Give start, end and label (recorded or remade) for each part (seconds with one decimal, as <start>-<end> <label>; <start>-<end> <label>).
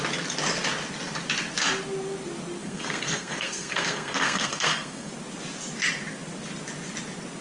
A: 0.0-2.6 recorded; 2.6-5.1 remade; 5.1-7.4 recorded